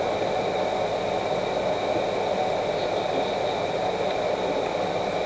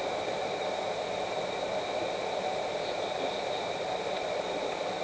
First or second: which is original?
first